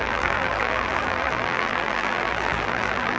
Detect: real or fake fake